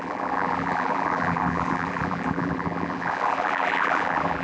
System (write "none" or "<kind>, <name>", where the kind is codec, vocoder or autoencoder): vocoder, BigVGAN v2